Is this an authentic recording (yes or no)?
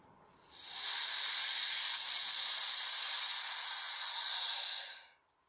yes